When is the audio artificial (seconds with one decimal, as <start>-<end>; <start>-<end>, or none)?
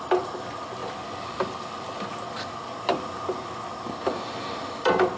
none